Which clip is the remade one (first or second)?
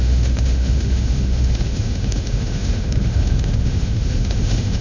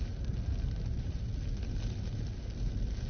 first